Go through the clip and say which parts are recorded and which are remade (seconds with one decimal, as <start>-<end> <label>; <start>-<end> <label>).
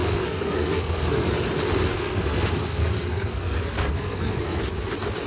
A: 0.0-1.3 remade; 1.3-1.9 recorded; 1.9-4.6 remade; 4.6-5.3 recorded